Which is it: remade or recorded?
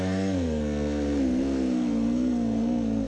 remade